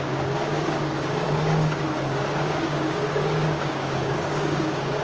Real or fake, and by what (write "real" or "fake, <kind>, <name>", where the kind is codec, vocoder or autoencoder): fake, codec, DAC